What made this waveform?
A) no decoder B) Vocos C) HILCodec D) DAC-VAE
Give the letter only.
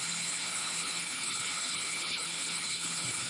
C